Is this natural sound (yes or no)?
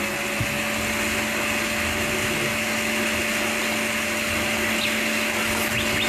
yes